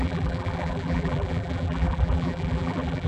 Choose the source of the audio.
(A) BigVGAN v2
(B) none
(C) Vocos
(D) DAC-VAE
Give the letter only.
A